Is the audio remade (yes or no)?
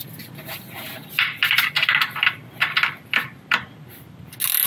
no